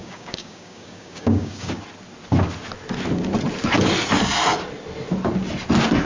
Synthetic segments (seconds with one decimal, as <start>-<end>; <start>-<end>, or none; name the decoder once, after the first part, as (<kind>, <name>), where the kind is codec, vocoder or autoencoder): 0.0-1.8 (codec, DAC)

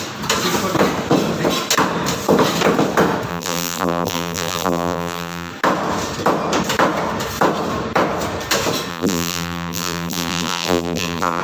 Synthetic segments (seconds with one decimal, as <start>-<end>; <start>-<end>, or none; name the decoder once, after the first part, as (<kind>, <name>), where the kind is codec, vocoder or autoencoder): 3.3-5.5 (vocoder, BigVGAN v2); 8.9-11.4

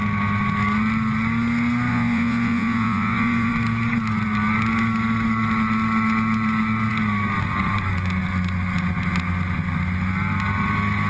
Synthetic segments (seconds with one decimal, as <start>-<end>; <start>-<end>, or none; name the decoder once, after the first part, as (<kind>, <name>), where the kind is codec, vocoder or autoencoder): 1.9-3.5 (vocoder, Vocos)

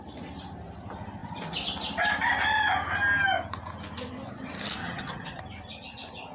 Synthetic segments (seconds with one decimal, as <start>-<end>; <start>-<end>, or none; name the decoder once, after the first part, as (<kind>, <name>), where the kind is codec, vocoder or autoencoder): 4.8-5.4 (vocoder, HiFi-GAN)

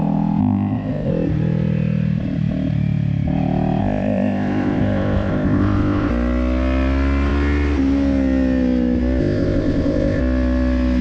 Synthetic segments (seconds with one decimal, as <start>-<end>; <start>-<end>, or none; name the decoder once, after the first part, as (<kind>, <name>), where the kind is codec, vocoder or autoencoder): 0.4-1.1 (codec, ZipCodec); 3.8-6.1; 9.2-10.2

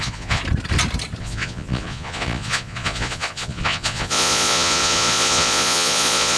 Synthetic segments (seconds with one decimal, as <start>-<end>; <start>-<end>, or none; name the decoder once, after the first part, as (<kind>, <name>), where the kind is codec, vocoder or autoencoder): 0.0-0.4 (vocoder, Vocos); 1.2-6.4